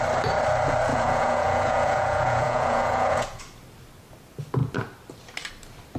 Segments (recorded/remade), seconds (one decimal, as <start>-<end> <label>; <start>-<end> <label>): 0.0-0.9 recorded; 0.9-3.4 remade; 3.4-6.0 recorded